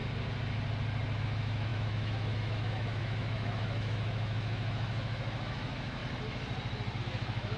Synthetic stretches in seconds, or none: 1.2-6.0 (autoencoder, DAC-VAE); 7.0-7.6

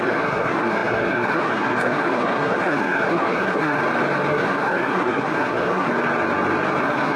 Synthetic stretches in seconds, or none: 0.0-3.8 (codec, SNAC); 4.3-5.9; 6.8-7.2

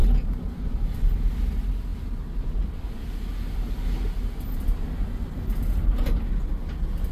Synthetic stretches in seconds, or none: none

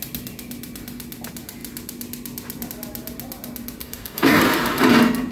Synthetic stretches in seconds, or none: 3.8-4.4 (codec, DAC)

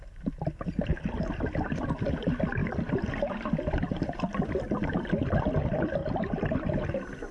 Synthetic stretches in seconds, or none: 0.0-0.9 (vocoder, BigVGAN v2); 1.6-6.0; 6.8-7.3

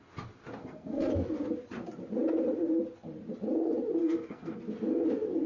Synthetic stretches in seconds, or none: 0.6-1.1 (codec, SNAC); 4.0-4.6